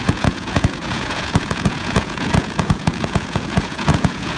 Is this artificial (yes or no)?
yes